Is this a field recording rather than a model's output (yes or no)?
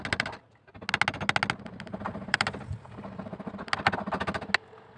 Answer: yes